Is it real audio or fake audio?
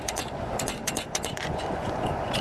fake